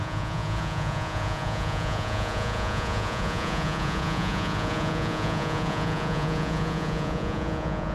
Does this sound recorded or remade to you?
remade